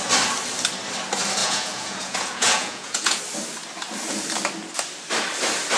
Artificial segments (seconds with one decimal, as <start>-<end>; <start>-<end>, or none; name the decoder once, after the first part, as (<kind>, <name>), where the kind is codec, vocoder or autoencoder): 1.4-3.2 (vocoder, Vocos)

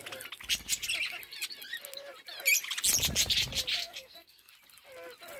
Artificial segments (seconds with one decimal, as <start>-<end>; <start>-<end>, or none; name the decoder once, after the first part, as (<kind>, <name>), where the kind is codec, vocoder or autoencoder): 3.8-4.5 (codec, SNAC)

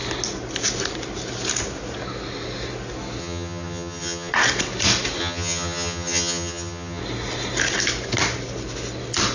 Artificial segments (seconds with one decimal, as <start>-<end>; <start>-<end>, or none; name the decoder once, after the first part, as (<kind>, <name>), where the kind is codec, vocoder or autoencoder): 3.2-4.3 (vocoder, HiFi-GAN); 5.2-7.0

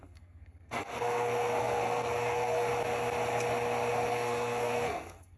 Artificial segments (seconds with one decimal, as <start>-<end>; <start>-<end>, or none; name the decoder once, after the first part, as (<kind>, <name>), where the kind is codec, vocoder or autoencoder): 0.0-2.7 (codec, SNAC); 4.1-5.4

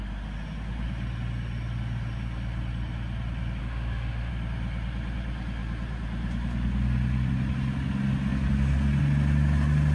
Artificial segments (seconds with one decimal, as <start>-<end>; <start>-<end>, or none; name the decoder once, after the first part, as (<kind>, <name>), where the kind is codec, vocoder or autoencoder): 3.6-4.3 (autoencoder, DAC-VAE)

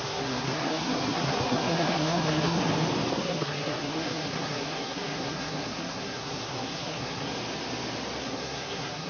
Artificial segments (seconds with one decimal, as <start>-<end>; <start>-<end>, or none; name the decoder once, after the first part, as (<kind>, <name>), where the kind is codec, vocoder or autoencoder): 0.0-2.6 (codec, SNAC); 3.1-7.3; 8.2-9.1

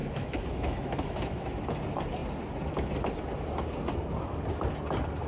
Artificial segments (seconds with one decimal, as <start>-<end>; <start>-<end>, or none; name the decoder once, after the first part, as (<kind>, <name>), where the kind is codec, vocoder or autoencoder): 0.0-1.6 (autoencoder, DAC-VAE)

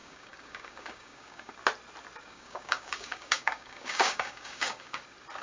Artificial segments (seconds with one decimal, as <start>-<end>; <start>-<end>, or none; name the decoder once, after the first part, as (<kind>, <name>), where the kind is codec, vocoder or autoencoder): 0.0-1.5 (codec, DAC); 2.2-5.0